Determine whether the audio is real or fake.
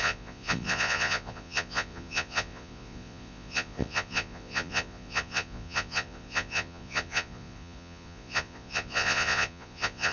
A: fake